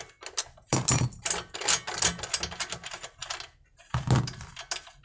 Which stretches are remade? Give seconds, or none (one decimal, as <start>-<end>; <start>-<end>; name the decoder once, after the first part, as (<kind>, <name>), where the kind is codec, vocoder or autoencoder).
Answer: none